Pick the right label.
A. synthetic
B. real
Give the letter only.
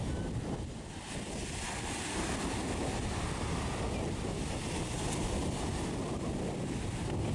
B